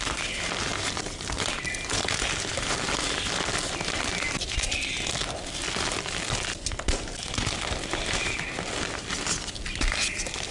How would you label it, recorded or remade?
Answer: recorded